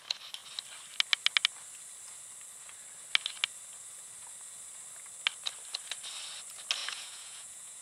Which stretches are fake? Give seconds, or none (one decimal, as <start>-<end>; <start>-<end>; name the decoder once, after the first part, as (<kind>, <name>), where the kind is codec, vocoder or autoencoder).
6.8-7.8 (vocoder, Vocos)